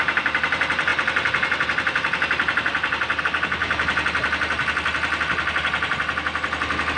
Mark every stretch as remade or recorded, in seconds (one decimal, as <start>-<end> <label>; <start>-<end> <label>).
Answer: 0.0-7.0 recorded